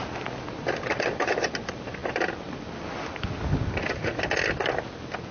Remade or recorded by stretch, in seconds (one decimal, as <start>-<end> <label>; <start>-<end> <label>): 0.0-5.3 recorded